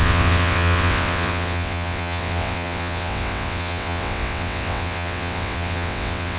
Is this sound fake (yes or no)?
yes